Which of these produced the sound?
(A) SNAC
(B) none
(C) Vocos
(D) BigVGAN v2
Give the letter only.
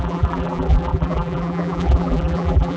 D